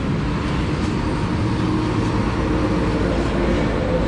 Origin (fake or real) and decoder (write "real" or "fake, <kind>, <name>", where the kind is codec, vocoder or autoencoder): real